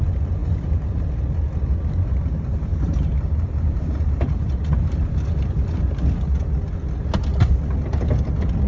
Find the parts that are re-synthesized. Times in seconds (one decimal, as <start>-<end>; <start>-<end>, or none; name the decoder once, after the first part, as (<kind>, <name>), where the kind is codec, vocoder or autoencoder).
0.4-1.2 (vocoder, BigVGAN v2); 2.7-5.1